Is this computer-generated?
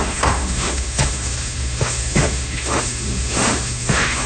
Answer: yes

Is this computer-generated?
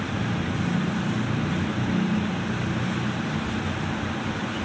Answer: no